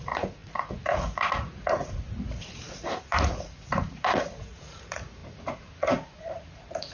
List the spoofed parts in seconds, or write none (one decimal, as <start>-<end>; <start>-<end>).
0.0-6.9